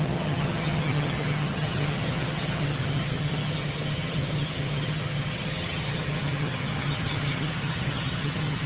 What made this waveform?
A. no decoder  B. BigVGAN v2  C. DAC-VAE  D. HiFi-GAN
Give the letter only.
D